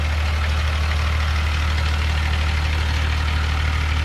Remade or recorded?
recorded